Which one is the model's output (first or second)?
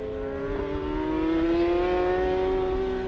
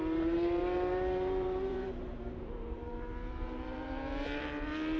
second